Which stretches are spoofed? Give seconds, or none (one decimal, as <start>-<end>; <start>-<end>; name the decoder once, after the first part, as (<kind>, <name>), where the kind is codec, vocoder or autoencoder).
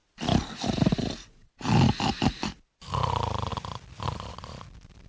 none